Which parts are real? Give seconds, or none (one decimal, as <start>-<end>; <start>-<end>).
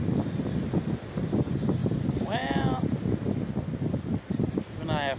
0.0-5.2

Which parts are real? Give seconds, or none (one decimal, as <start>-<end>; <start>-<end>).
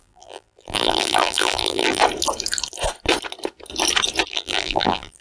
2.0-4.3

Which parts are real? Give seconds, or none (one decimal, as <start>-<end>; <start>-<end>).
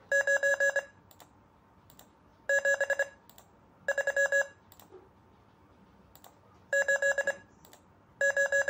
0.0-8.7